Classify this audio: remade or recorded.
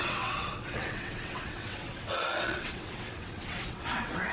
remade